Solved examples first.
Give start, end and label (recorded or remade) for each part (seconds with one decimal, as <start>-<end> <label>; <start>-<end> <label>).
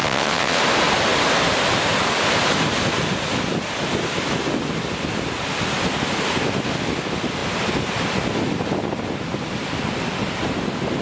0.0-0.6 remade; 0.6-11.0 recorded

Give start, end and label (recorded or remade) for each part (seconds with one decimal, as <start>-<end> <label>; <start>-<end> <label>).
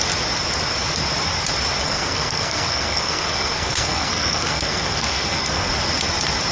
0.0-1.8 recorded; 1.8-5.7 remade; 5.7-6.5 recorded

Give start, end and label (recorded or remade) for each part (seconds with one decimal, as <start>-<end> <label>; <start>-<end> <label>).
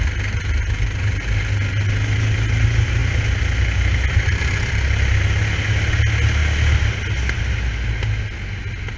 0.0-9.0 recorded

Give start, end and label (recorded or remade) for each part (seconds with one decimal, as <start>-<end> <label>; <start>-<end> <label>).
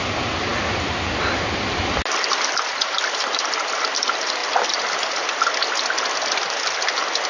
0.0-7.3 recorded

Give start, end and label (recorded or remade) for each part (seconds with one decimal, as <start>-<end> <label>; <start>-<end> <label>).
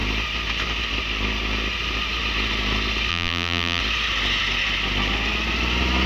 0.0-3.1 recorded; 3.1-3.8 remade; 3.8-6.1 recorded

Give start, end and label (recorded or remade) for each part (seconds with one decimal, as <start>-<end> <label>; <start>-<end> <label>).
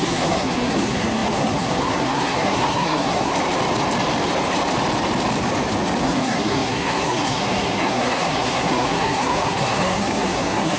0.0-3.3 remade; 3.3-6.0 recorded; 6.0-10.8 remade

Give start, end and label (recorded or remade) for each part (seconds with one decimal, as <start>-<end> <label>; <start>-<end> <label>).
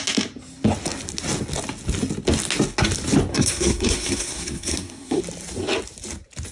0.0-3.3 recorded; 3.3-5.2 remade; 5.2-6.5 recorded